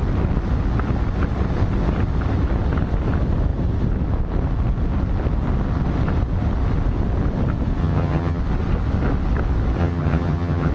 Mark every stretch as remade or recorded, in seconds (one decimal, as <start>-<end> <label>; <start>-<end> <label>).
0.0-7.8 recorded; 7.8-8.4 remade; 8.4-9.8 recorded; 9.8-10.7 remade

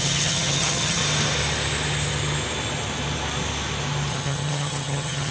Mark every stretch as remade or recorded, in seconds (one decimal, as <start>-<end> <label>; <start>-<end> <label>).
0.0-1.0 remade; 1.0-4.1 recorded; 4.1-5.3 remade